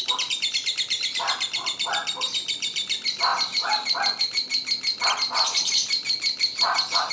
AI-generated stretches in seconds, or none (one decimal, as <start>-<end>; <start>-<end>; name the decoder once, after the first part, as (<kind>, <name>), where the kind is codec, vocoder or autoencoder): none